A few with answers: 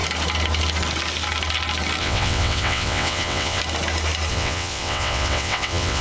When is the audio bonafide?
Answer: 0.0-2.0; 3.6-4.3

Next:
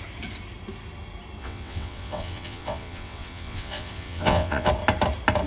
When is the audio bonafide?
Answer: 0.0-1.4; 4.7-5.5

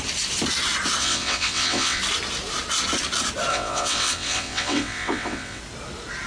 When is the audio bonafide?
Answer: 0.0-1.0; 2.0-3.5; 5.6-6.3

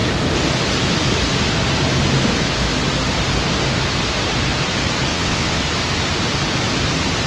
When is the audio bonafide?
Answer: 0.0-5.1; 5.6-7.3

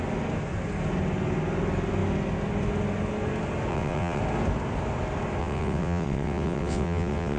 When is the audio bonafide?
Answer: 0.0-3.7; 4.2-5.4